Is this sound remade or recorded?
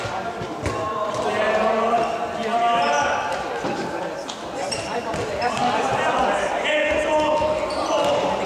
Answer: recorded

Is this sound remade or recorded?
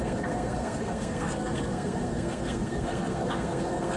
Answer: remade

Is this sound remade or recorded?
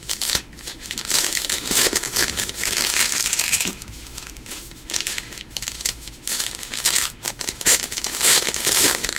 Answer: remade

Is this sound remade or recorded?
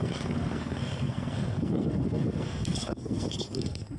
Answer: remade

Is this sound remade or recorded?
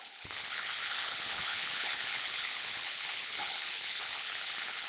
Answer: remade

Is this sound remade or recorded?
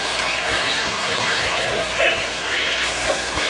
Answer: remade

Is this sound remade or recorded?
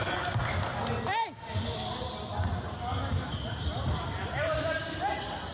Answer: recorded